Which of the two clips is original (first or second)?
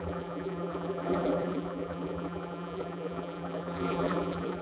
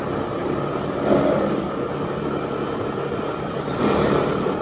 second